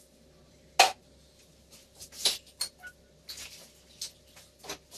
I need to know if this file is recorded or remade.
recorded